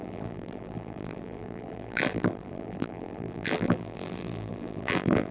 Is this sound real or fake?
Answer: fake